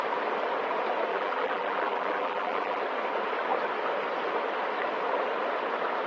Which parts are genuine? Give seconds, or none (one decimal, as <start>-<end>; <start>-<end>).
0.0-1.1; 2.8-6.1